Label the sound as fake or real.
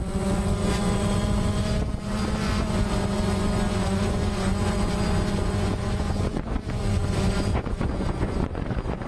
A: fake